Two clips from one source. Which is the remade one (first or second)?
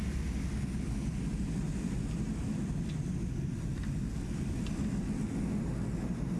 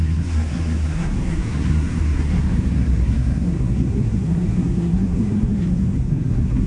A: second